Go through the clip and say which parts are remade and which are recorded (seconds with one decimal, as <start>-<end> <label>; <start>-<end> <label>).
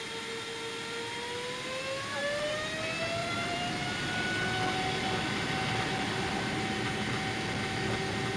0.0-3.2 recorded; 3.2-3.7 remade; 3.7-8.4 recorded